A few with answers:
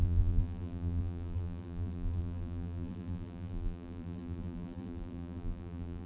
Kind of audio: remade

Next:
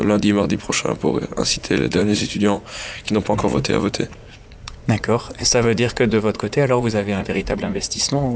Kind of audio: remade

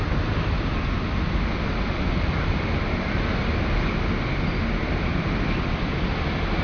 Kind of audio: recorded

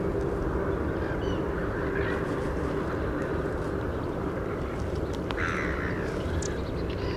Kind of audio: recorded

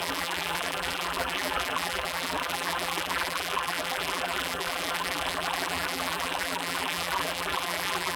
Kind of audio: remade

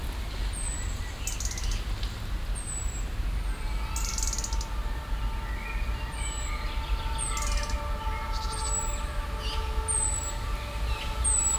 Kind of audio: recorded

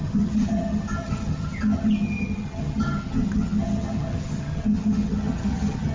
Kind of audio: remade